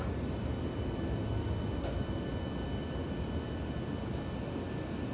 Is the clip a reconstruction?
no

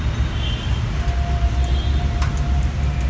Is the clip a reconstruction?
no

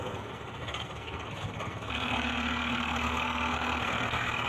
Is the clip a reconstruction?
yes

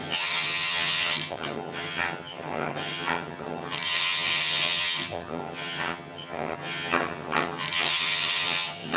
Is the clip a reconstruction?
yes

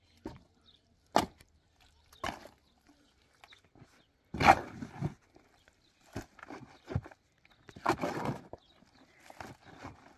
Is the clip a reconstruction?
no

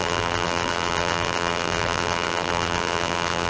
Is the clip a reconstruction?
yes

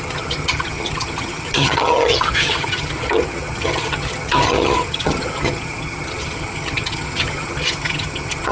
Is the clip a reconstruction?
yes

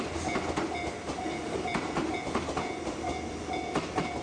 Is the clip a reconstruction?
no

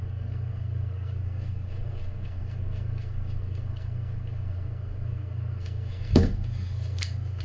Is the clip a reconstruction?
yes